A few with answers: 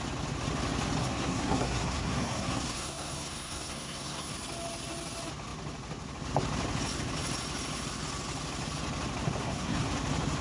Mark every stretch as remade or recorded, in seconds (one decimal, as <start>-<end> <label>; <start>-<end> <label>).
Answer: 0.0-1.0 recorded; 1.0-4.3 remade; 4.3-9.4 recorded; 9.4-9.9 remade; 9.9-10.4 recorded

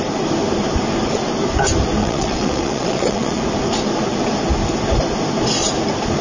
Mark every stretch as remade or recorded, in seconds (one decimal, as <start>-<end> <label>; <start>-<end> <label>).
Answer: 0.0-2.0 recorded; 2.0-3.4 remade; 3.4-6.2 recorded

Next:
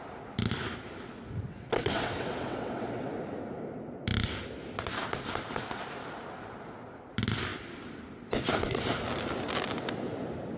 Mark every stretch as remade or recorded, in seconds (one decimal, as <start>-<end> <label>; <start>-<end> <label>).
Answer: 0.0-1.5 recorded; 1.5-3.1 remade; 3.1-10.6 recorded

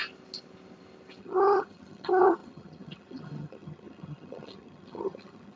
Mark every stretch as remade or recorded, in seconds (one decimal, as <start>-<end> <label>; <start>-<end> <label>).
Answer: 0.0-1.2 recorded; 1.2-5.6 remade

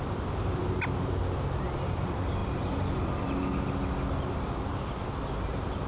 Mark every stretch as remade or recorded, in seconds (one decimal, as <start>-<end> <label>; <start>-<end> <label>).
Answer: 0.0-5.9 recorded